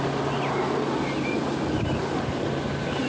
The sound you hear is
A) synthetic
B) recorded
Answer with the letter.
B